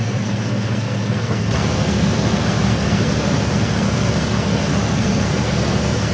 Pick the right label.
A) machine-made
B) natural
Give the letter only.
A